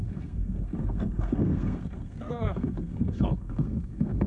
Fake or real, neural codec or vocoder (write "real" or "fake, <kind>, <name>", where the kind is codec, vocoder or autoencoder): fake, codec, SNAC